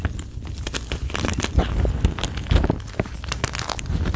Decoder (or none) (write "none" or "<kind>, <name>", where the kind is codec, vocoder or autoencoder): none